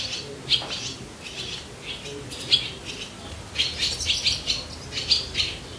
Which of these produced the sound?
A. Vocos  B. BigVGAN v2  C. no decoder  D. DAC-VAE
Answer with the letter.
C